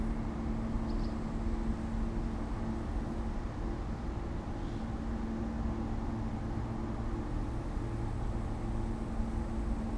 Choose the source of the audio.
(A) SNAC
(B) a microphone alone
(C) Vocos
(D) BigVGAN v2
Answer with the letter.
B